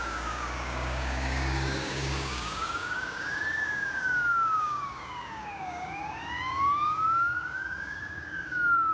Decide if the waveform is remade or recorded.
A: remade